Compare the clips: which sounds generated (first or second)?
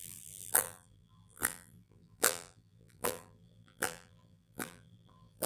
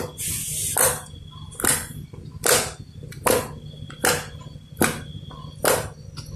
first